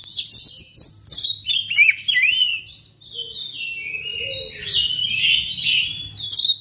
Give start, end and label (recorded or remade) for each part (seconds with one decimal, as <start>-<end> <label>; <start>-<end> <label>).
0.0-6.6 recorded

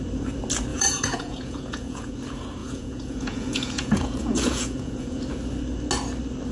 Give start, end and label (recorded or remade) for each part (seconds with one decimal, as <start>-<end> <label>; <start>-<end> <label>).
0.0-0.7 recorded; 0.7-2.1 remade; 2.1-2.6 recorded; 2.6-5.2 remade; 5.2-6.5 recorded

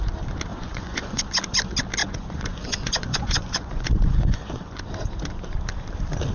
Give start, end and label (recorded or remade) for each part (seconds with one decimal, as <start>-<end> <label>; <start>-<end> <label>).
0.0-0.5 recorded; 0.5-1.2 remade; 1.2-2.0 recorded; 2.0-4.8 remade; 4.8-6.3 recorded

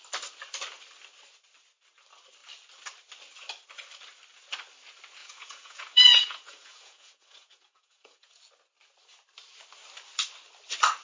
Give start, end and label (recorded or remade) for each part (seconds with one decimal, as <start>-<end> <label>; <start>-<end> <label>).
0.0-5.2 recorded; 5.2-8.4 remade; 8.4-11.0 recorded